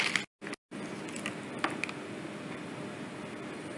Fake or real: real